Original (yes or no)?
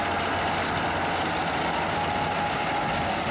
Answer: yes